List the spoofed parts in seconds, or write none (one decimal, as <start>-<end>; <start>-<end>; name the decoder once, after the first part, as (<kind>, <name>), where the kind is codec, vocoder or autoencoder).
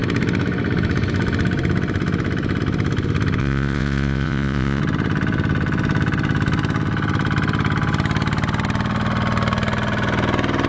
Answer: 3.4-4.8 (vocoder, Vocos)